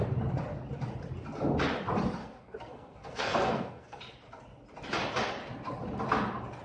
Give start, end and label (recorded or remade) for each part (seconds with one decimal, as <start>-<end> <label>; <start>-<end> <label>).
0.0-2.2 recorded; 2.2-4.0 remade; 4.0-6.6 recorded